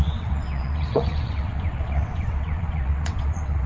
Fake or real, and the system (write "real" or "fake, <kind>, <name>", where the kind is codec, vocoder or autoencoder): fake, vocoder, WaveNeXt